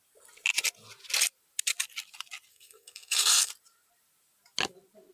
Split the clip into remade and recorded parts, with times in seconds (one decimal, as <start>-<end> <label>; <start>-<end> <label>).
0.0-2.5 recorded; 2.5-3.5 remade; 3.5-5.1 recorded